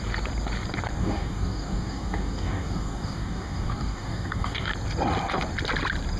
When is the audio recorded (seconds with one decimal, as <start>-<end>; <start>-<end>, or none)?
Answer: 0.0-1.0; 4.7-6.2